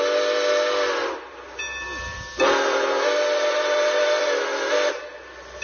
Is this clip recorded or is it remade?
recorded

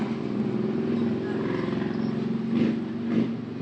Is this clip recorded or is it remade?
recorded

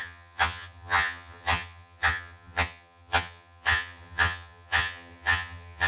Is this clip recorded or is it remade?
remade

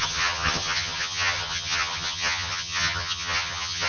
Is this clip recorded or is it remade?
remade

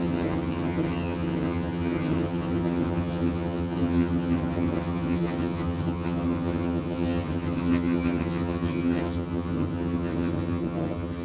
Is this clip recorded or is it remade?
remade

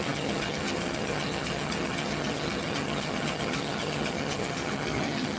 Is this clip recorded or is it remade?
remade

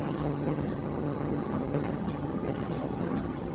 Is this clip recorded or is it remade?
remade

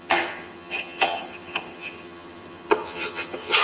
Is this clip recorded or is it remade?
remade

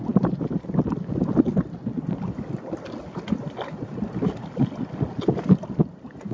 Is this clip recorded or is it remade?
recorded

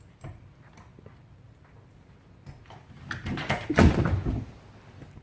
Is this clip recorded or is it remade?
recorded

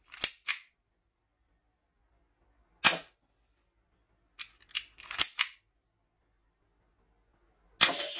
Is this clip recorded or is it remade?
recorded